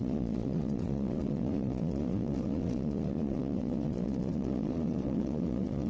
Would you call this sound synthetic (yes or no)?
yes